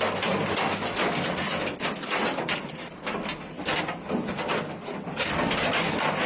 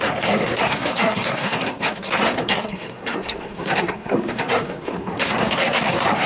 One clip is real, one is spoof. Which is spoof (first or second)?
second